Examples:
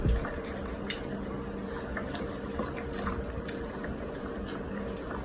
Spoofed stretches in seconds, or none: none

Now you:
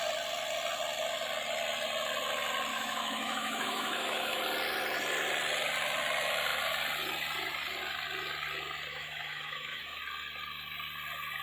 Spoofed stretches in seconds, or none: 2.7-4.4 (autoencoder, DAC-VAE); 8.9-10.0

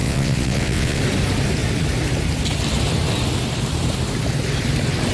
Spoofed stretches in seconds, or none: 0.0-1.0 (vocoder, WaveNeXt)

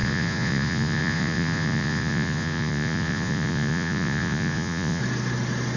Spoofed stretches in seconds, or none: 0.0-5.0 (vocoder, Vocos)

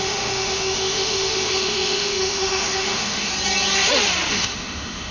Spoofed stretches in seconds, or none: 0.0-3.3 (autoencoder, DAC-VAE); 4.3-5.1